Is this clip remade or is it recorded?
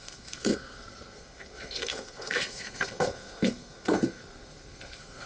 remade